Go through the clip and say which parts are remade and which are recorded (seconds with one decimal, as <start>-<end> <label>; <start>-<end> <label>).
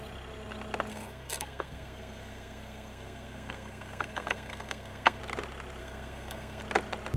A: 0.0-0.9 recorded; 0.9-5.2 remade; 5.2-5.8 recorded; 5.8-6.6 remade; 6.6-7.2 recorded